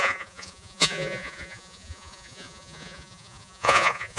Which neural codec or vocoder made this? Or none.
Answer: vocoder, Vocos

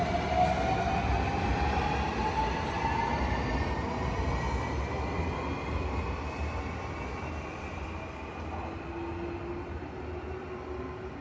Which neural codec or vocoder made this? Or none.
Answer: none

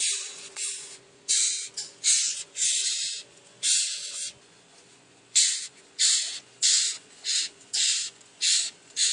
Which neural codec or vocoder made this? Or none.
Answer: vocoder, Vocos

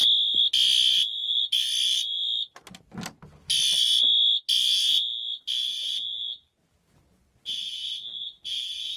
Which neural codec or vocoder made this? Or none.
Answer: none